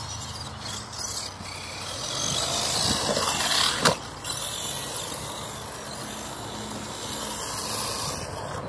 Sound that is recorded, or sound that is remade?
recorded